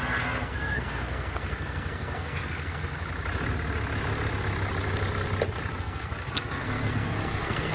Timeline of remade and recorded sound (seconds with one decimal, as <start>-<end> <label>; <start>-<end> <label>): 0.0-3.0 remade; 3.0-5.8 recorded; 5.8-7.7 remade